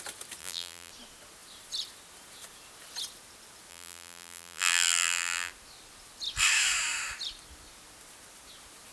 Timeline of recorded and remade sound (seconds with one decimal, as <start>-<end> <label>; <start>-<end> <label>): 0.0-0.4 recorded; 0.4-0.9 remade; 0.9-3.7 recorded; 3.7-5.5 remade; 5.5-8.9 recorded